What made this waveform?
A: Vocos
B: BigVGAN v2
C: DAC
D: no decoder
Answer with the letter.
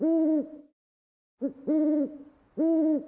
D